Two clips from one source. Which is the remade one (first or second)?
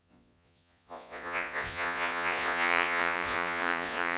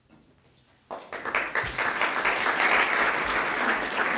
first